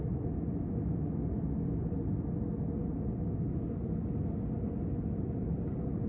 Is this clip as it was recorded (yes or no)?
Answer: yes